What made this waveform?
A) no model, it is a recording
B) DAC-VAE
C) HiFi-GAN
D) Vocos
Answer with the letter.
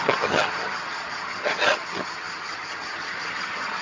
C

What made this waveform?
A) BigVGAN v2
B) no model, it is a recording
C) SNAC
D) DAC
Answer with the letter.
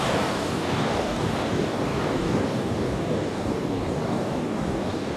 D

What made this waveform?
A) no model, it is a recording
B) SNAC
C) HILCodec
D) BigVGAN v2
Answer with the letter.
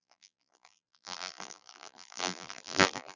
D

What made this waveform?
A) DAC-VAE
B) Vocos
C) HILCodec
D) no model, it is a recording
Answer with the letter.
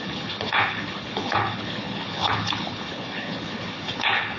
C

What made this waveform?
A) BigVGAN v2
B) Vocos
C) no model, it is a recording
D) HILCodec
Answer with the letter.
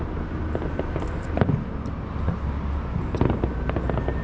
C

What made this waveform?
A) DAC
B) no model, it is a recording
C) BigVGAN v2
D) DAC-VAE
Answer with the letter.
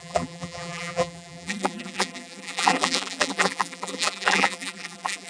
C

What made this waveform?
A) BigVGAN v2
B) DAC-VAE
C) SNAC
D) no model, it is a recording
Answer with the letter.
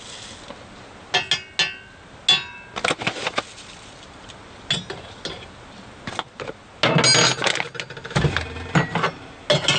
D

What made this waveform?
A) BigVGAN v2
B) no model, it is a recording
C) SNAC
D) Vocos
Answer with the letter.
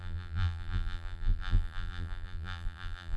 A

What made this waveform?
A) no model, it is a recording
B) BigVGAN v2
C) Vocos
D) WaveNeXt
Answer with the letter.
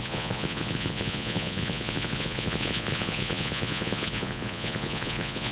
C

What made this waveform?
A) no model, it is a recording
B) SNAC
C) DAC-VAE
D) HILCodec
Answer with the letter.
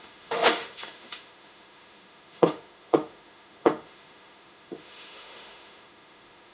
C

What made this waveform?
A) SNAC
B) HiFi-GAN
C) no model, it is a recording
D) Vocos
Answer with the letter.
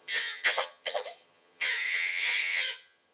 B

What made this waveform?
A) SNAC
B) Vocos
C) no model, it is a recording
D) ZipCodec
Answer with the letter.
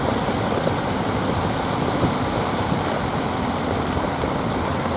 C